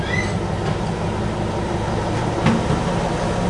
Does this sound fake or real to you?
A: real